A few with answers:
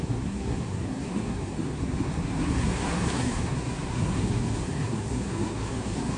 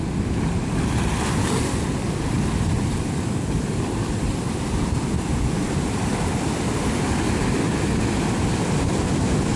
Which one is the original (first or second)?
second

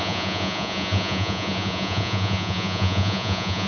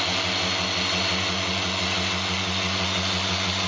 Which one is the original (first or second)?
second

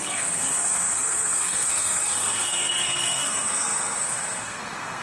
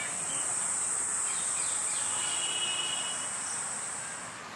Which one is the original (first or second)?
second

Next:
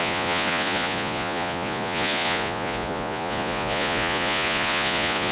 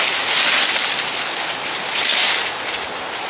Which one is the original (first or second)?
second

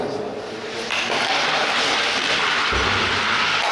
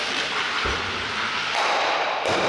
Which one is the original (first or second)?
first